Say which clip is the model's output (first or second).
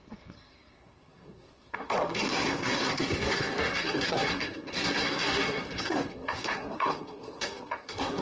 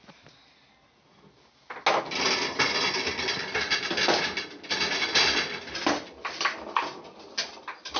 first